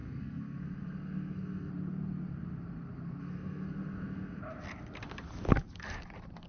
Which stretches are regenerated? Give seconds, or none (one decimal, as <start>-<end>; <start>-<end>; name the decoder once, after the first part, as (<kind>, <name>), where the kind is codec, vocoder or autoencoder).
0.0-1.7 (codec, SNAC); 3.2-4.4